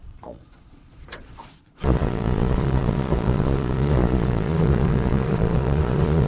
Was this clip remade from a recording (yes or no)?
yes